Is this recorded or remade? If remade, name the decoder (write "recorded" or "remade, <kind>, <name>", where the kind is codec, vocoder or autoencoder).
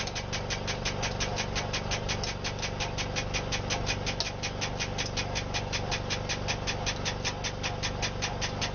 recorded